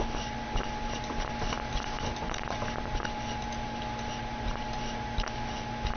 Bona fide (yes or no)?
yes